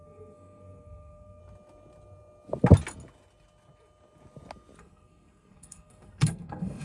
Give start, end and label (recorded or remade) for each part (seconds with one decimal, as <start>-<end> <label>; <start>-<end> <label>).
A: 0.0-1.4 remade; 1.4-4.8 recorded; 4.8-6.8 remade